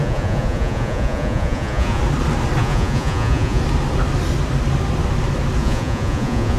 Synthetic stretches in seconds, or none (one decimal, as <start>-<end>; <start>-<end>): 0.0-2.0; 2.6-3.6; 5.6-6.6